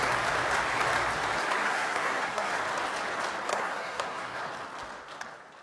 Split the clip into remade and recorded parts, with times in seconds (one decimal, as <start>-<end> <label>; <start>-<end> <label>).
0.0-1.6 recorded; 1.6-2.5 remade; 2.5-3.5 recorded; 3.5-4.4 remade; 4.4-5.6 recorded